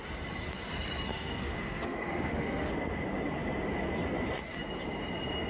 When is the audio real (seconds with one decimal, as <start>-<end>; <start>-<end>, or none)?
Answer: 0.0-1.1; 2.7-5.5